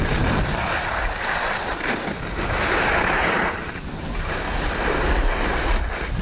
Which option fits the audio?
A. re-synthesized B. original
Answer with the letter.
B